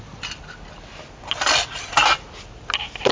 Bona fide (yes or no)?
yes